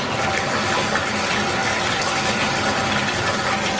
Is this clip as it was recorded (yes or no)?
yes